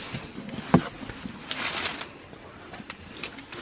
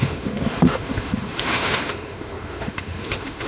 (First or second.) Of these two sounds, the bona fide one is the first